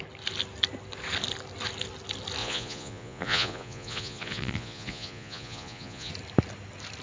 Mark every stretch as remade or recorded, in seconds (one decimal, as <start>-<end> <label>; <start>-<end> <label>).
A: 0.0-2.4 recorded; 2.4-6.1 remade; 6.1-7.0 recorded